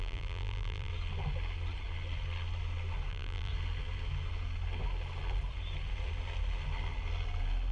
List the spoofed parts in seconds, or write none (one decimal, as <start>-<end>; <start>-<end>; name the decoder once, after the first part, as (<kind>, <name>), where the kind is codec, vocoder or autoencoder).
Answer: 0.0-0.9 (vocoder, BigVGAN v2); 3.1-3.5